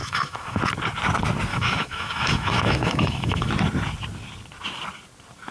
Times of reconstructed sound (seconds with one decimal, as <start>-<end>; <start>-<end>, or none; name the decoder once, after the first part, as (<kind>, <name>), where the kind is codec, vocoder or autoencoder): 0.0-0.6 (autoencoder, DAC-VAE); 1.5-3.5